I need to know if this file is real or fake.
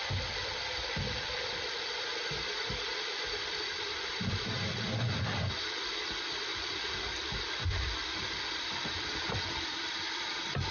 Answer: fake